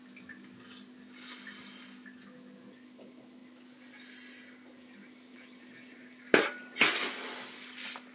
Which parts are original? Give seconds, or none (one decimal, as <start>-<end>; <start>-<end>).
0.0-8.1